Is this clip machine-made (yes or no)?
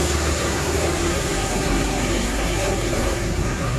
yes